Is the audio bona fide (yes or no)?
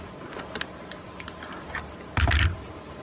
yes